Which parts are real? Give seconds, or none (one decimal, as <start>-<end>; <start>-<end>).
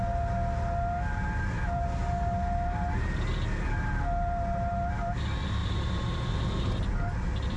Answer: 0.0-5.6; 6.3-7.6